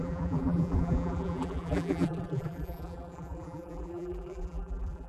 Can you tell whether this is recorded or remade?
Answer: remade